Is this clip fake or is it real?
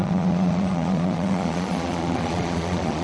fake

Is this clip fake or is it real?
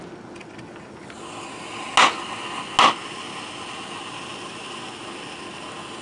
real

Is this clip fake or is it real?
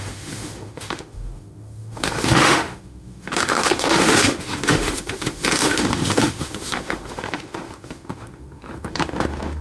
fake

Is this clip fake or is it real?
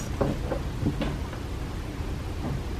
real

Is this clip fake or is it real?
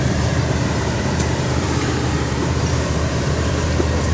fake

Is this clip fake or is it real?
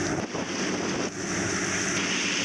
real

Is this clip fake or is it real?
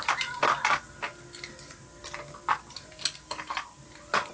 real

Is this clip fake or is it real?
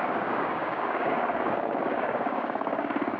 fake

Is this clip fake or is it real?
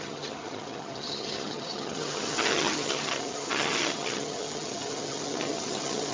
fake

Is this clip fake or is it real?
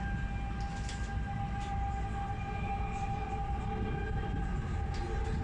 real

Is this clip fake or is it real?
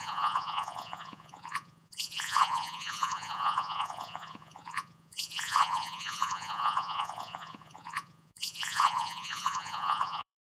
fake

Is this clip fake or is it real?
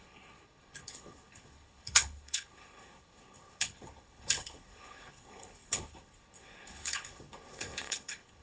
fake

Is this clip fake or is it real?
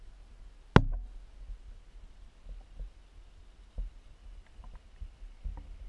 real